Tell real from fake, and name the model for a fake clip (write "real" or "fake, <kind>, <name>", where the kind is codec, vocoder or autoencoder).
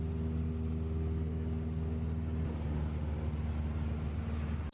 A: real